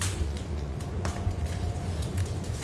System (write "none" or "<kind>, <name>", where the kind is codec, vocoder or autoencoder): vocoder, Vocos